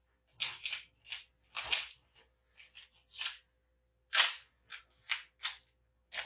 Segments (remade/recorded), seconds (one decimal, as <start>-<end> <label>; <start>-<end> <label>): 0.0-6.3 recorded

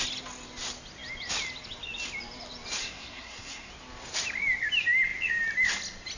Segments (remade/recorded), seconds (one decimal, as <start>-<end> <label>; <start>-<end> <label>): 0.0-2.8 recorded; 2.8-3.7 remade; 3.7-6.2 recorded

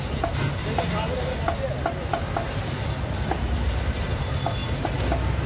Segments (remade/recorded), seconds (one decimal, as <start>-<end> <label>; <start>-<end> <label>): 0.0-5.5 recorded